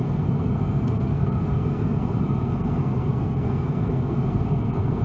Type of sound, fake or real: fake